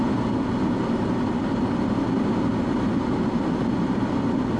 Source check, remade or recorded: recorded